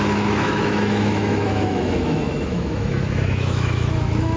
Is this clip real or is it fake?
fake